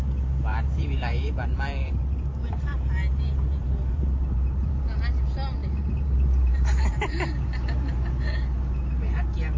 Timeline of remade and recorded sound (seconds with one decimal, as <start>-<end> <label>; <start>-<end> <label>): 0.0-0.5 recorded; 0.5-5.0 remade; 5.0-5.6 recorded; 5.6-8.1 remade; 8.1-9.6 recorded